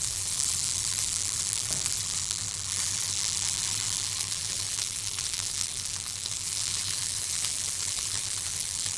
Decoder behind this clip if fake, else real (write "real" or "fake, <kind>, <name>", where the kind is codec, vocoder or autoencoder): fake, vocoder, BigVGAN v2